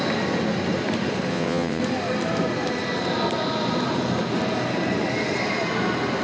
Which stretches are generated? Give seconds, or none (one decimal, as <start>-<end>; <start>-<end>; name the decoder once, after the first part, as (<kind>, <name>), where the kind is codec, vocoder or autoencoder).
1.3-1.8 (vocoder, WaveNeXt)